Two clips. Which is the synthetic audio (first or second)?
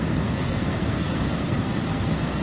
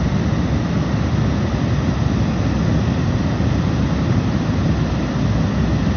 first